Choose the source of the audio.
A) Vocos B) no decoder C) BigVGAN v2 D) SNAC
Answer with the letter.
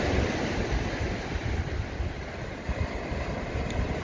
B